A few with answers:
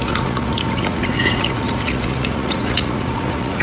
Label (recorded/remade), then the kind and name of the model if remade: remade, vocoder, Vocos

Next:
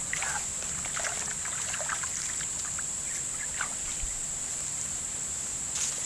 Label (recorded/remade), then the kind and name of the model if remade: recorded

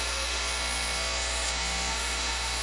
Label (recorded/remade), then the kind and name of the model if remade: remade, autoencoder, DAC-VAE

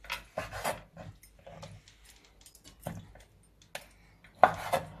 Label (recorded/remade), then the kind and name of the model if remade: recorded